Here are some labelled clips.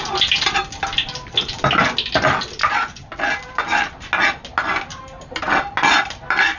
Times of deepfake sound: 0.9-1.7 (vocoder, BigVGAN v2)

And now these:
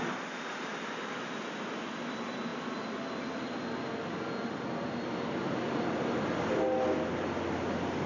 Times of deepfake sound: none